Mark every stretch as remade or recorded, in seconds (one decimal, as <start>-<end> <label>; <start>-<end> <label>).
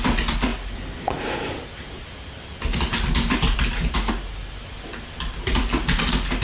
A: 0.0-6.4 recorded